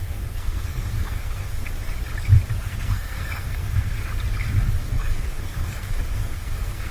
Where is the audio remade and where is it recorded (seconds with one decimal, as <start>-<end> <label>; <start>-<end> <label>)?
0.0-1.6 remade; 1.6-2.6 recorded; 2.6-4.1 remade; 4.1-4.8 recorded; 4.8-6.9 remade

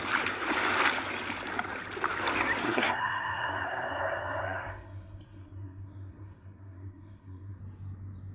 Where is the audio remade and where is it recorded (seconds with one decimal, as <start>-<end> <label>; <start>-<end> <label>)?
0.0-2.6 recorded; 2.6-7.6 remade; 7.6-8.3 recorded

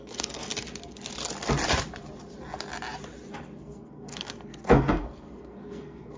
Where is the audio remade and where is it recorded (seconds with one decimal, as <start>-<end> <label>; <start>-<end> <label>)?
0.0-0.5 remade; 0.5-3.3 recorded; 3.3-6.2 remade

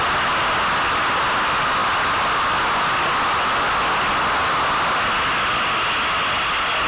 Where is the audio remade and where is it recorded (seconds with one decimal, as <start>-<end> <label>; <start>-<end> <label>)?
0.0-6.9 recorded